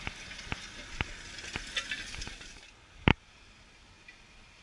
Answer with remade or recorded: recorded